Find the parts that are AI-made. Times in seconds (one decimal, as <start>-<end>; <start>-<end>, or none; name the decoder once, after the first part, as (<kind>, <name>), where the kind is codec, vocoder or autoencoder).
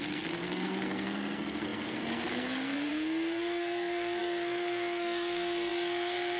0.0-6.4 (codec, SNAC)